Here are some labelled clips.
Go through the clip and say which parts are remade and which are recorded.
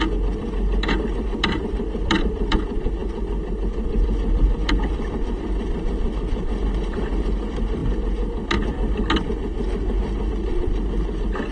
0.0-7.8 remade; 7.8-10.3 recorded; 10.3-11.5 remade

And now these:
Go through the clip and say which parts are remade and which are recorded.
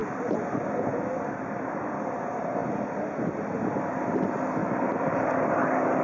0.0-0.8 remade; 0.8-4.6 recorded; 4.6-5.3 remade; 5.3-6.0 recorded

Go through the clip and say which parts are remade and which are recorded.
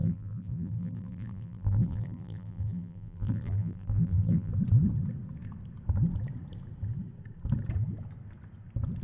0.0-4.5 remade; 4.5-9.0 recorded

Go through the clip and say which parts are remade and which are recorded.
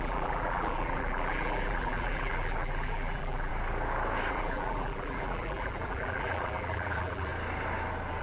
0.0-3.5 remade; 3.5-4.3 recorded; 4.3-7.3 remade; 7.3-8.2 recorded